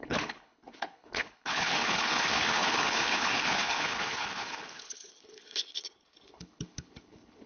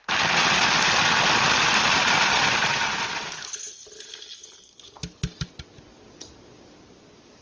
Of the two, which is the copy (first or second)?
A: first